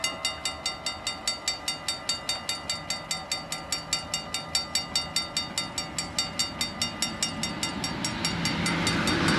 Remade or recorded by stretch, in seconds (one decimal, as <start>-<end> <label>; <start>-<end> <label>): 0.0-9.4 recorded